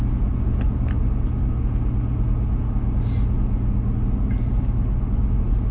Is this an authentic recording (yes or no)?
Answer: yes